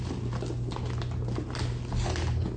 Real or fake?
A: real